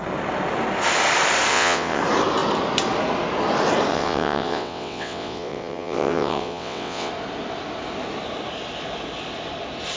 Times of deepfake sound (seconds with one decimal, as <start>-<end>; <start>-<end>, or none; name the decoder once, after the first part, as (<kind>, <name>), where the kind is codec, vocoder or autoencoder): 1.5-2.0 (vocoder, WaveNeXt); 3.9-7.1